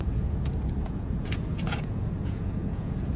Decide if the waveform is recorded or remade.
remade